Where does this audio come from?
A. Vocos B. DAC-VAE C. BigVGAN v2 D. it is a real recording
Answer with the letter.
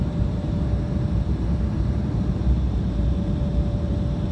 C